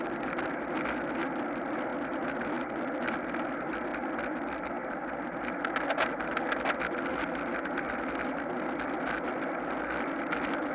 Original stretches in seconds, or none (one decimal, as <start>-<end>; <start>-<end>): 0.0-10.7